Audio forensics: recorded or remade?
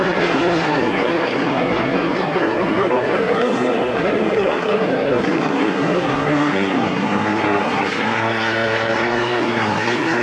remade